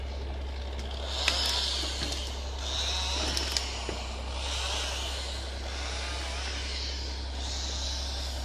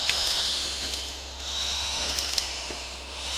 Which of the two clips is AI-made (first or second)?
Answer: second